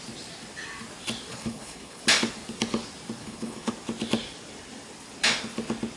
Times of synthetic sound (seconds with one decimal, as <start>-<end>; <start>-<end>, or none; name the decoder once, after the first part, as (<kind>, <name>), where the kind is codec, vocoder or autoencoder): 1.3-2.0 (codec, HILCodec); 3.2-3.7